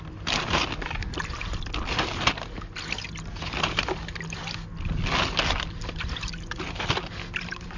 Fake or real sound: real